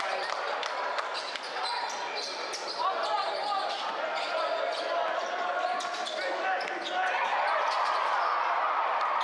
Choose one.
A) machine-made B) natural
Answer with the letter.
B